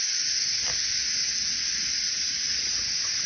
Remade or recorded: recorded